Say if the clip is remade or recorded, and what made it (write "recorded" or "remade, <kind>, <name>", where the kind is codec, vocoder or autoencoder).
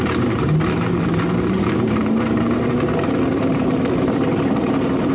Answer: remade, vocoder, BigVGAN v2